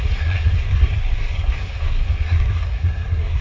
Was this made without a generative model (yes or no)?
no